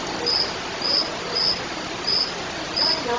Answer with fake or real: real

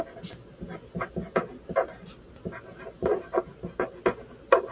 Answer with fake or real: real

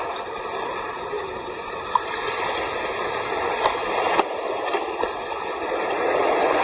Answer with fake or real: real